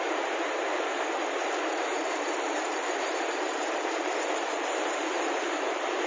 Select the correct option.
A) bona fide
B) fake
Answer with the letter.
B